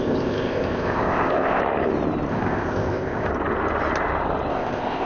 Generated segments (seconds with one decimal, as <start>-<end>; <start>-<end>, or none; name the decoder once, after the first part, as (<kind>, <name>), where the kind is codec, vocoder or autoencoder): 0.0-1.6 (codec, ZipCodec); 2.3-3.3; 4.5-5.1